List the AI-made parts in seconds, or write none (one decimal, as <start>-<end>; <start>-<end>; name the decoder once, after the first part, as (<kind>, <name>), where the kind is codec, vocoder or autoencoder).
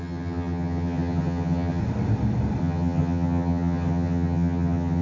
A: 0.0-1.8 (vocoder, HiFi-GAN); 2.6-5.0